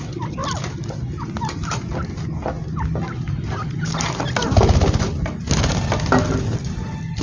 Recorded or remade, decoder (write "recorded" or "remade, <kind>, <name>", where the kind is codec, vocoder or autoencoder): recorded